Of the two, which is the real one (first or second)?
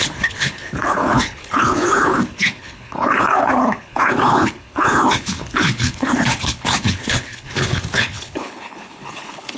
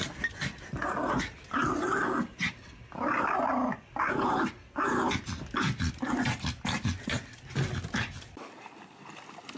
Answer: second